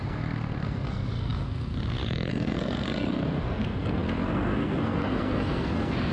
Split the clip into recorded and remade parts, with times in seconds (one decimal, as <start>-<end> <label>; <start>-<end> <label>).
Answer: 0.0-6.1 remade